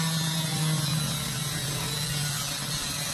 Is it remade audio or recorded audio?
recorded